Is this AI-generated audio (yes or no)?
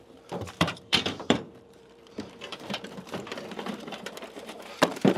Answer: yes